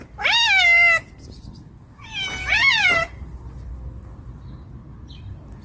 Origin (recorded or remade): recorded